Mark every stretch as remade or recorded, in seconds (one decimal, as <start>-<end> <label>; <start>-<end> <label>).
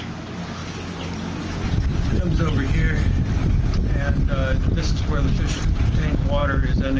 0.0-7.0 recorded